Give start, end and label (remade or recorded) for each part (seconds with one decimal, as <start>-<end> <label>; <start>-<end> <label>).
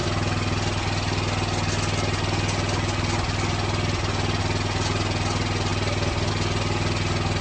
0.0-7.4 recorded